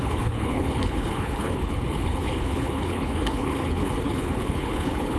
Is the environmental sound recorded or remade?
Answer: remade